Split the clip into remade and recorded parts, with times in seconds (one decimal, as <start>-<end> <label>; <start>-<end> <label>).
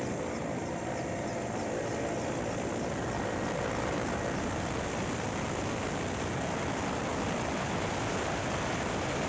0.0-9.3 recorded